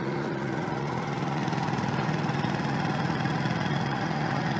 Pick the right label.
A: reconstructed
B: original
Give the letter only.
A